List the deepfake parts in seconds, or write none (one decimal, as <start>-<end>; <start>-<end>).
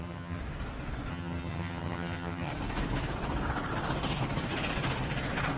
0.0-0.4; 1.1-2.5